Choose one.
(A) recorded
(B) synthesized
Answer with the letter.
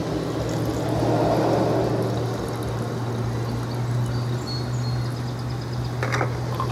A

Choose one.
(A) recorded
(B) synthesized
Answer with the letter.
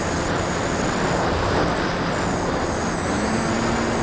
A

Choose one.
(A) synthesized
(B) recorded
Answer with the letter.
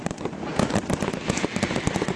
B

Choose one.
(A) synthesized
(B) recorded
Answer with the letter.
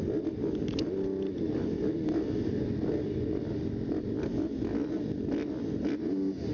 B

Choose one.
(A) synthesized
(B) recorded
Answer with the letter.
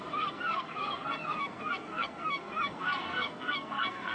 A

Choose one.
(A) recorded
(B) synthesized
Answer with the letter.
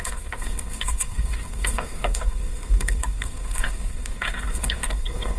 B